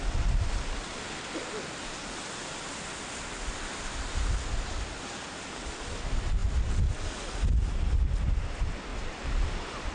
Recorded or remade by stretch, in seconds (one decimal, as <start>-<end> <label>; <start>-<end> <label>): 0.0-8.9 recorded; 8.9-9.9 remade